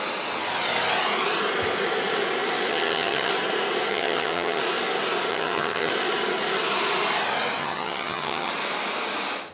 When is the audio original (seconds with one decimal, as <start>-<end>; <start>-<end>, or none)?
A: 0.0-2.7; 3.3-3.9; 4.6-5.3; 5.9-7.6; 8.5-9.5